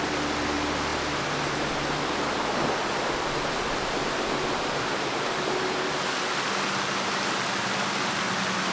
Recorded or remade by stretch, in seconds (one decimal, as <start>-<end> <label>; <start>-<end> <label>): 0.0-8.7 recorded

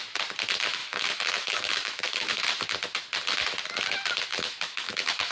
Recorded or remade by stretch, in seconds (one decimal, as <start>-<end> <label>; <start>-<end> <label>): 0.0-0.8 recorded; 0.8-2.4 remade; 2.4-4.3 recorded; 4.3-5.3 remade

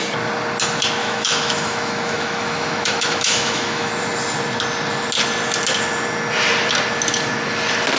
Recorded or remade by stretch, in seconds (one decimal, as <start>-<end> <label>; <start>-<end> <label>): 0.0-1.0 recorded; 1.0-3.9 remade; 3.9-8.0 recorded

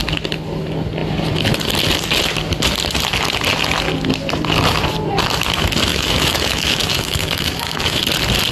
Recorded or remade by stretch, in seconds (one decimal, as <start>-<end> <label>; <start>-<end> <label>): 0.0-5.9 recorded; 5.9-8.0 remade; 8.0-8.5 recorded

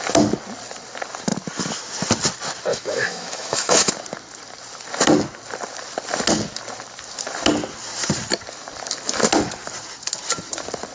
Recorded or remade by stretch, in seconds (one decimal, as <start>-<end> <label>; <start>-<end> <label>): 0.0-2.7 recorded; 2.7-3.9 remade; 3.9-10.9 recorded

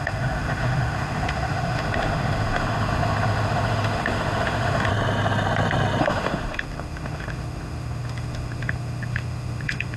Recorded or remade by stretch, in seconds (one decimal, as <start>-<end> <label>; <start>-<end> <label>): 0.0-4.9 remade; 4.9-6.0 recorded; 6.0-10.0 remade

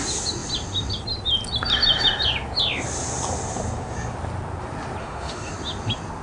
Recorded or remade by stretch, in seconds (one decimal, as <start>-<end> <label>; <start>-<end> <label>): 0.0-5.0 recorded; 5.0-5.5 remade; 5.5-6.2 recorded

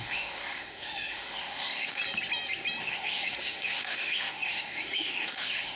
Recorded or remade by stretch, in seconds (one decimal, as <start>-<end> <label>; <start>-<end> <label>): 0.0-2.0 remade; 2.0-2.8 recorded; 2.8-5.8 remade